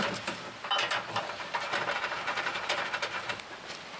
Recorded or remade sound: recorded